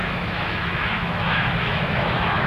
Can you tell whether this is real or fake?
fake